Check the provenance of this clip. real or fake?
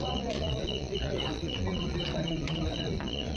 fake